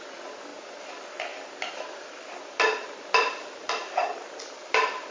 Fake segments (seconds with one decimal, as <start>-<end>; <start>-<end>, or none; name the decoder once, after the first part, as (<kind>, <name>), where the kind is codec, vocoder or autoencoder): none